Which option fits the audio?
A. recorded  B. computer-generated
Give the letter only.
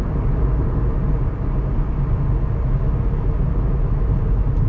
A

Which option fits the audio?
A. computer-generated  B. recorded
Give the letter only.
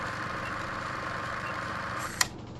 A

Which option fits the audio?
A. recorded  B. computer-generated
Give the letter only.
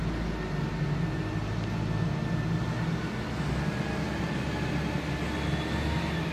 A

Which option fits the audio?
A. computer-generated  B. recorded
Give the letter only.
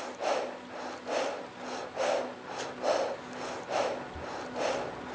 B